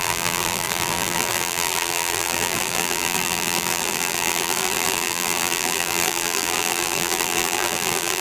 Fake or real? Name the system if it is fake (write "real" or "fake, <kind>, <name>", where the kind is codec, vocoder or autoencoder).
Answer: fake, vocoder, BigVGAN v2